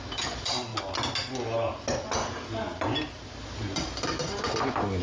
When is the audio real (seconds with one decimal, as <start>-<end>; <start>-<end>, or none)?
0.7-3.7